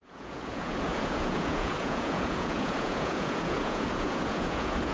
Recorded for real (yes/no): no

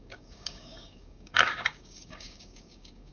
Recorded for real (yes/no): no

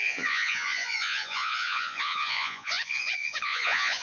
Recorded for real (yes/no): no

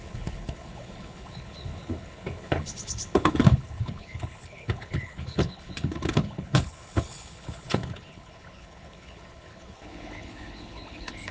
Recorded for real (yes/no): no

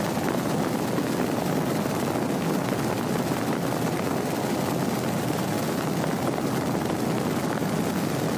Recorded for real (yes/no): yes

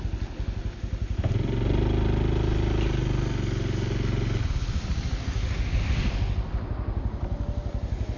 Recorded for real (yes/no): yes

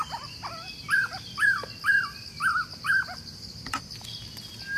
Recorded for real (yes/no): yes